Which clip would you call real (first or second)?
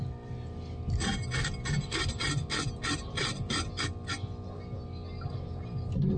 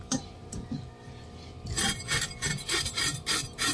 first